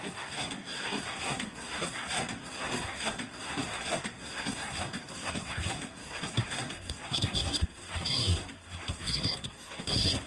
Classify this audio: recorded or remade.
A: remade